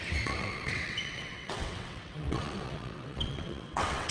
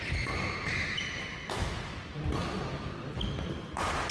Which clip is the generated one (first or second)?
first